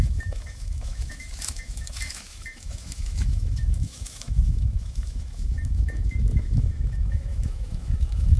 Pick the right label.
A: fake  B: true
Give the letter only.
A